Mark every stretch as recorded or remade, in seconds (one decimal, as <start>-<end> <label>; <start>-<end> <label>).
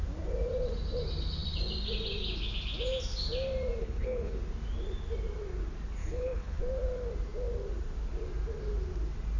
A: 0.0-3.8 recorded; 3.8-4.4 remade; 4.4-6.0 recorded; 6.0-6.6 remade; 6.6-9.4 recorded